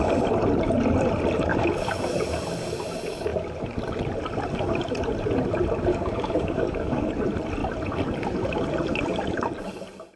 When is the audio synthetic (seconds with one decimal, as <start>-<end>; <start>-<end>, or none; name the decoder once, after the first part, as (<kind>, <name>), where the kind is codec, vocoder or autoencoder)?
1.5-2.0 (codec, DAC); 5.9-7.1